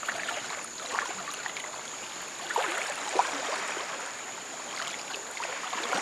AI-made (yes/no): no